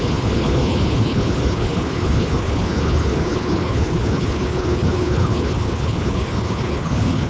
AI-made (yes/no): yes